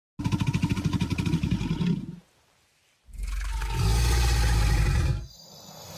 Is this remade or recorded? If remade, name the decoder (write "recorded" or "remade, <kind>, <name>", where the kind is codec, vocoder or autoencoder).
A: recorded